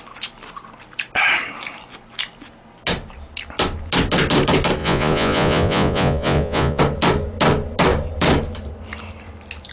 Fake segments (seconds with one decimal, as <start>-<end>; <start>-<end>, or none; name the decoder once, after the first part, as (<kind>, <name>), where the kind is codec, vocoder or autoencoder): 4.8-6.8 (vocoder, Vocos)